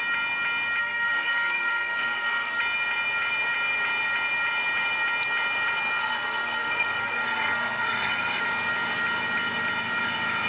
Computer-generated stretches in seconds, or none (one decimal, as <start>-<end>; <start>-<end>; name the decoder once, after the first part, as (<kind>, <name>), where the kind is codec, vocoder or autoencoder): 0.8-2.6 (codec, SNAC); 6.0-8.4